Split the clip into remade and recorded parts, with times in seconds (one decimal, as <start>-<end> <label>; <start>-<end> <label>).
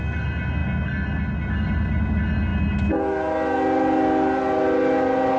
0.0-5.4 recorded